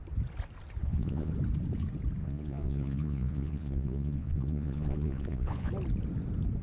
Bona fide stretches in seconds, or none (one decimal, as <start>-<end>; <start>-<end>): 0.0-0.8; 1.3-2.2; 5.7-6.6